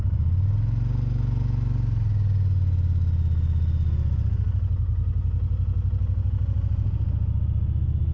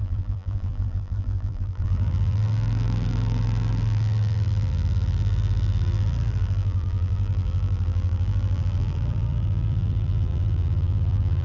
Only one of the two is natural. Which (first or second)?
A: first